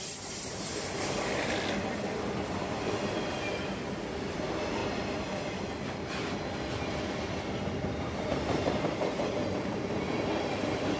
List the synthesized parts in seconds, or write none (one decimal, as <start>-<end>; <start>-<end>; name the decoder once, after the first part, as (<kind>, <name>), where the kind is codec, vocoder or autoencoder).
0.0-0.7 (vocoder, BigVGAN v2); 4.2-4.8; 8.1-11.0